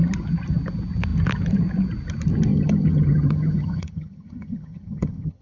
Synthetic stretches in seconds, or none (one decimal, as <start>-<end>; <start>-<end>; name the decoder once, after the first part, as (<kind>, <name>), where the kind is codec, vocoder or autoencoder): 2.5-5.4 (vocoder, HiFi-GAN)